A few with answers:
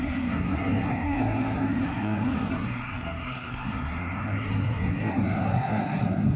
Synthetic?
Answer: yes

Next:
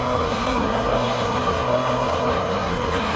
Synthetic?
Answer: yes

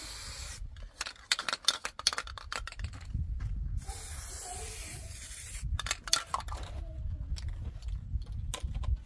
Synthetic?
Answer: no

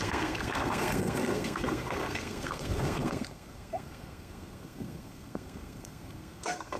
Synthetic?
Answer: yes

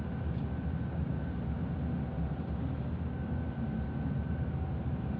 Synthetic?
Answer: no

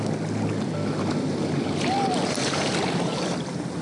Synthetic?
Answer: no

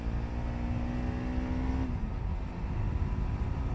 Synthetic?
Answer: no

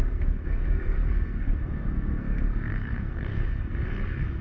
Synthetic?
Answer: yes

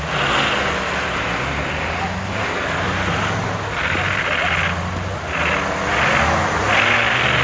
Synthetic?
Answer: no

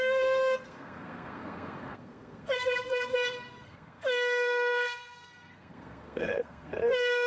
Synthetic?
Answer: yes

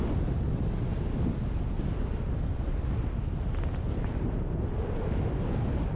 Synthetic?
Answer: no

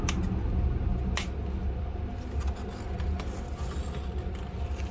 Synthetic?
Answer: no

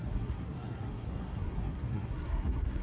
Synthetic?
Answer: yes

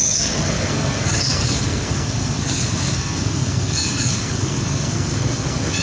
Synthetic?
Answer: yes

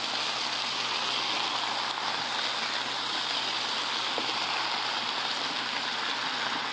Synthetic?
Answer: no